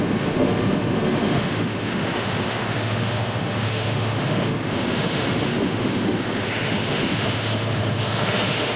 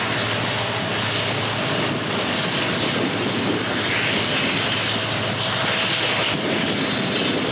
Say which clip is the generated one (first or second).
first